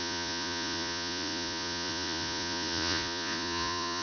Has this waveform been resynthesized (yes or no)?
yes